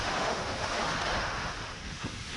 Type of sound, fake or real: fake